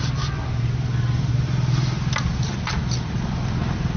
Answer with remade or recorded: recorded